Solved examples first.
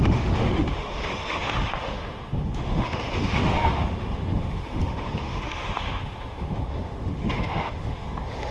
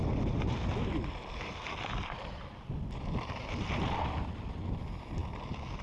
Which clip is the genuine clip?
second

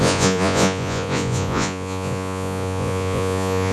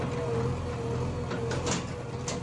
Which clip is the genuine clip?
second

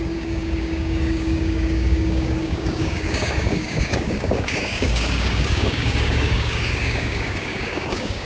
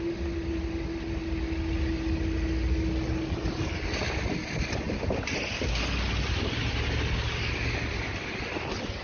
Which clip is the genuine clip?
second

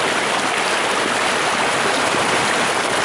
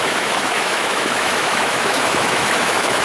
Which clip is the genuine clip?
first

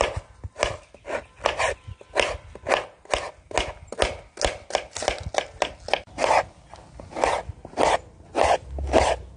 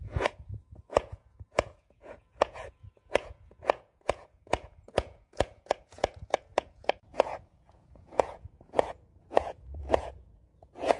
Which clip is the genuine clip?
first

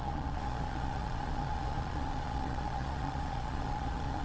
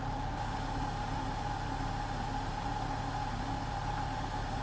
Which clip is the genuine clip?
second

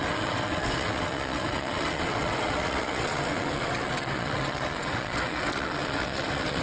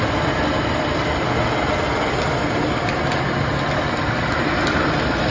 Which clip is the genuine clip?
second